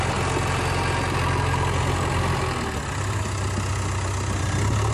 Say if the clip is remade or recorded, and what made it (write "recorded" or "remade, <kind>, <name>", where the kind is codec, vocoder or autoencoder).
recorded